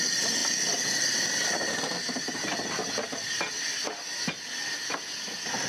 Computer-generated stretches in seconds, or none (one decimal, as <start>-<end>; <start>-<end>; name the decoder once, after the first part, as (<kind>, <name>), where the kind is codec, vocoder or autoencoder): none